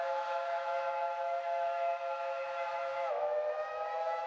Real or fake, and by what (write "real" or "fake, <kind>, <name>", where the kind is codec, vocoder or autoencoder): fake, autoencoder, DAC-VAE